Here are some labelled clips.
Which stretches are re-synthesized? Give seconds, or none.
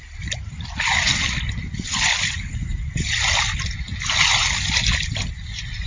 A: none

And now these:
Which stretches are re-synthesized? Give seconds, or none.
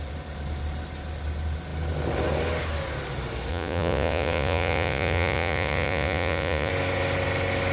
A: 3.5-6.7 (vocoder, Vocos)